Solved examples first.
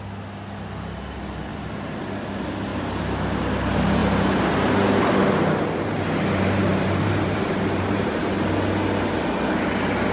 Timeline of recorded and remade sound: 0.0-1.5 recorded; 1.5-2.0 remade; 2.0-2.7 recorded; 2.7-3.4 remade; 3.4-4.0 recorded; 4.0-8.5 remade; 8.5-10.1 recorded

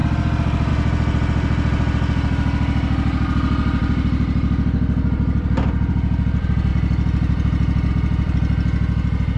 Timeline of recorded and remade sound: 0.0-9.4 recorded

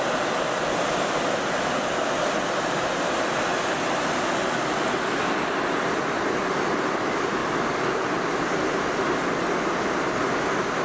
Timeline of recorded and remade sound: 0.0-10.8 recorded

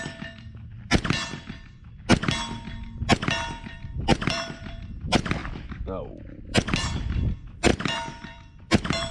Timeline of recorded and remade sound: 0.0-1.3 remade; 1.3-3.6 recorded; 3.6-5.4 remade; 5.4-6.0 recorded; 6.0-9.1 remade

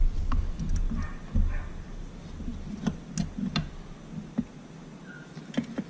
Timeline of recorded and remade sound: 0.0-5.9 recorded

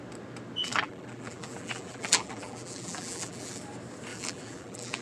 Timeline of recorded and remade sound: 0.0-0.6 recorded; 0.6-3.6 remade; 3.6-4.1 recorded; 4.1-5.0 remade